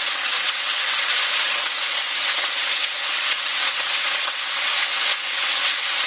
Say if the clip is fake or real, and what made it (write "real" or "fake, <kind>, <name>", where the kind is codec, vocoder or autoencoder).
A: fake, vocoder, WaveNeXt